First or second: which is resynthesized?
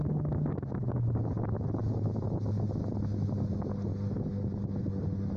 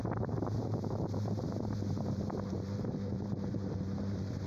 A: second